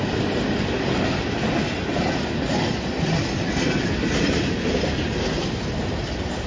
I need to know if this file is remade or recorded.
recorded